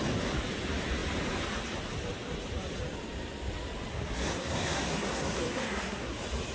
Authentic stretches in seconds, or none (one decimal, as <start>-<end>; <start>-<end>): 0.0-3.9; 6.1-6.5